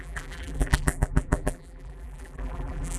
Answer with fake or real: fake